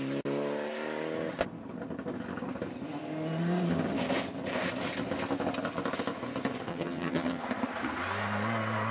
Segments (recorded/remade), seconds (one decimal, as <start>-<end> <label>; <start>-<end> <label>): 0.0-6.7 recorded; 6.7-7.4 remade; 7.4-8.9 recorded